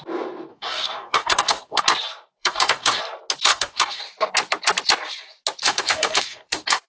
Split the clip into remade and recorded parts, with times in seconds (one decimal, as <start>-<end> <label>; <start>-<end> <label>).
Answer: 0.0-0.5 recorded; 0.5-1.8 remade; 1.8-2.4 recorded; 2.4-3.0 remade; 3.0-3.5 recorded; 3.5-4.0 remade; 4.0-5.6 recorded; 5.6-6.9 remade